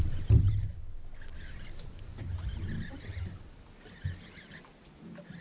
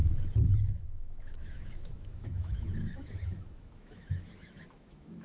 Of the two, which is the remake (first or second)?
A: second